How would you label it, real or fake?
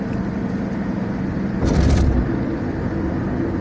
real